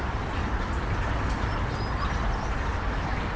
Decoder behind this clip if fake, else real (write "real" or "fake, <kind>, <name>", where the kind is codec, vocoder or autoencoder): real